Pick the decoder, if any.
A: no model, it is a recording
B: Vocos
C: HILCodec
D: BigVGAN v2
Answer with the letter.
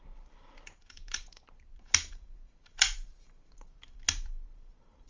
D